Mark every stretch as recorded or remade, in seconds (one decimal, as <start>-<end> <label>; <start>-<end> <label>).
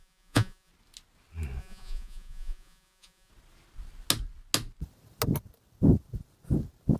0.0-0.7 remade; 0.7-1.6 recorded; 1.6-3.3 remade; 3.3-7.0 recorded